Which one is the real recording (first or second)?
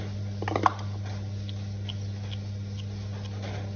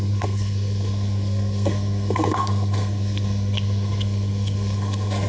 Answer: first